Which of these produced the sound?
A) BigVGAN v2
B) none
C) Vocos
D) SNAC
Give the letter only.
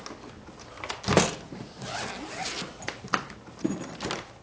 B